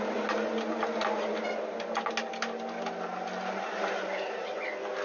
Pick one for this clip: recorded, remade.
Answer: recorded